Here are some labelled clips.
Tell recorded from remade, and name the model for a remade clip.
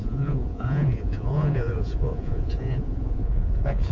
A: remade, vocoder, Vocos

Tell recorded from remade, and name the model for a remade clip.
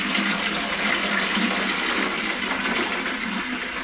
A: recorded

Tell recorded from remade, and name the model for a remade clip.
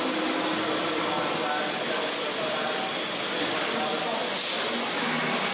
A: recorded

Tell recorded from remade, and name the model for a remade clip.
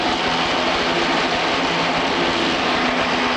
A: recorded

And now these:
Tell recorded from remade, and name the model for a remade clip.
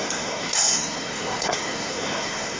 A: remade, codec, SNAC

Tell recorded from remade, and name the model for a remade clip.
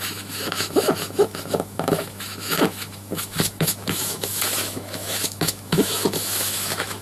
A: remade, autoencoder, DAC-VAE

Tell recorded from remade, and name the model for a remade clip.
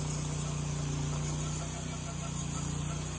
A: recorded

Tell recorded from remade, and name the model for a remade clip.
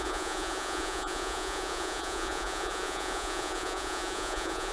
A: remade, vocoder, Vocos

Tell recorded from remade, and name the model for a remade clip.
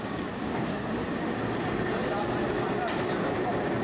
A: recorded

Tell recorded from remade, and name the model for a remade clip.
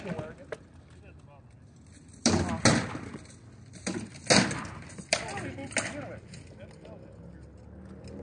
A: recorded